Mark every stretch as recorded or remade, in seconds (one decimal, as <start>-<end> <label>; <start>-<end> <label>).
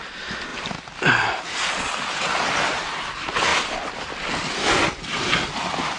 0.0-0.5 recorded; 0.5-1.4 remade; 1.4-3.5 recorded; 3.5-6.0 remade